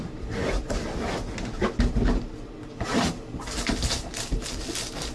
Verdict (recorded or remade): recorded